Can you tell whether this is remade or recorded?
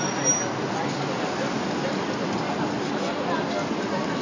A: recorded